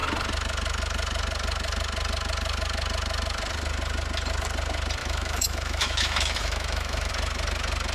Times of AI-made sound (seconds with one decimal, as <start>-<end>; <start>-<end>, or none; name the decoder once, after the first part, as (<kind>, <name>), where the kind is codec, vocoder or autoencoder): 5.0-7.1 (autoencoder, DAC-VAE)